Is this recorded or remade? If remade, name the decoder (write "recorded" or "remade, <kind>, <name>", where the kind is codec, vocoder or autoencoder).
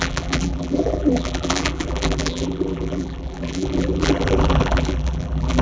remade, vocoder, BigVGAN v2